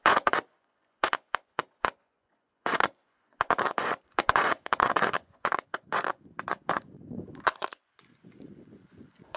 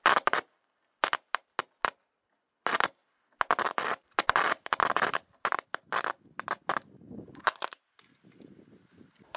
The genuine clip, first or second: second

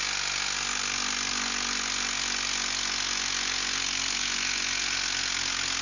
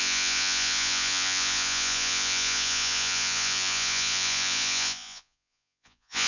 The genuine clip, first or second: first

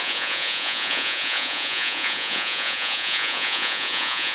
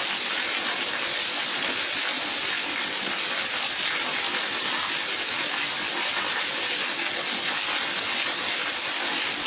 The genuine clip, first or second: second